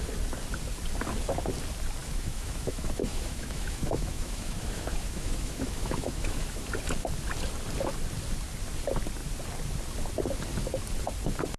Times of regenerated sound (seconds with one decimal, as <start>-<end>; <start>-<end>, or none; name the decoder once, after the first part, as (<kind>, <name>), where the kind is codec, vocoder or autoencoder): 2.0-6.7 (autoencoder, DAC-VAE)